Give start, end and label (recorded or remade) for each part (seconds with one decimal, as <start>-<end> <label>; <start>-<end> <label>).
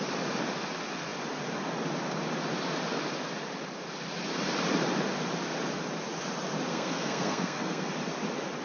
0.0-6.7 recorded; 6.7-7.9 remade; 7.9-8.6 recorded